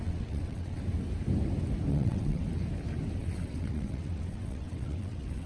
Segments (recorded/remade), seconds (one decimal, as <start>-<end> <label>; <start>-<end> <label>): 0.0-0.8 remade; 0.8-1.9 recorded; 1.9-2.4 remade; 2.4-3.2 recorded; 3.2-5.5 remade

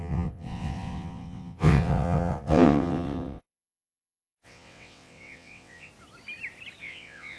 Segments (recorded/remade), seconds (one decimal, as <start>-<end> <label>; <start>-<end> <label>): 0.0-5.9 remade; 5.9-6.8 recorded; 6.8-7.4 remade

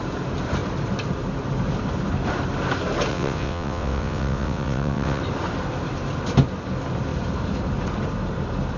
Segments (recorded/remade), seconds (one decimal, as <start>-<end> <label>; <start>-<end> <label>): 0.0-3.1 recorded; 3.1-5.2 remade; 5.2-8.8 recorded

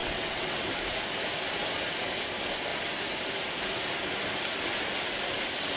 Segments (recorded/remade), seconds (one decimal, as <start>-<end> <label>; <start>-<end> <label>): 0.0-0.6 remade; 0.6-5.8 recorded

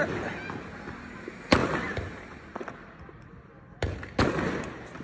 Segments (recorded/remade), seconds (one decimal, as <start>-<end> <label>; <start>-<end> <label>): 0.0-5.0 recorded

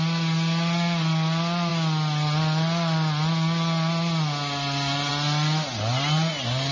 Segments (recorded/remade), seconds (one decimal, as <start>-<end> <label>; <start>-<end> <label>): 0.0-6.7 recorded

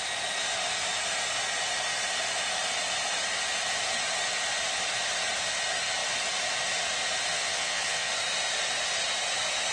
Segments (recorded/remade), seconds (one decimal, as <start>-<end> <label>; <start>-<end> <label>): 0.0-7.3 recorded; 7.3-8.1 remade; 8.1-9.7 recorded

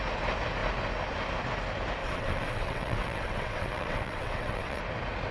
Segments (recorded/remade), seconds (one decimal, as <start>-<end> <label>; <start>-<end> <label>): 0.0-2.0 recorded; 2.0-4.8 remade; 4.8-5.3 recorded